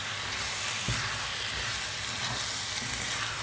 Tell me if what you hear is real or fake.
real